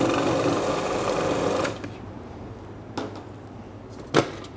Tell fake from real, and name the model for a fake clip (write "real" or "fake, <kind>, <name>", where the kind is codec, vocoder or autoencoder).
real